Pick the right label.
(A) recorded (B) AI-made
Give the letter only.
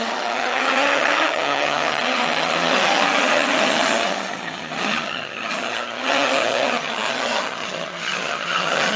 B